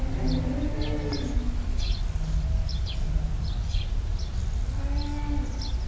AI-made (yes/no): no